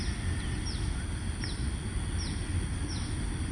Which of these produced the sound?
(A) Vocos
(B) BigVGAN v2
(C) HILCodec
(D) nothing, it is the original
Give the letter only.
D